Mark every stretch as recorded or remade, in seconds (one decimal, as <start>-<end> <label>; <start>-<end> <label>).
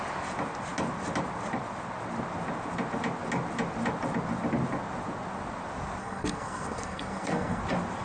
0.0-6.0 recorded; 6.0-7.6 remade; 7.6-8.0 recorded